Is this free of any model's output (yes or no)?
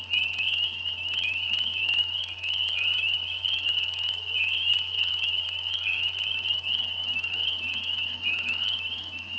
no